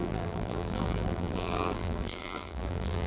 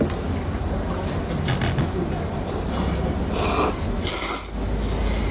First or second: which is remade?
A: first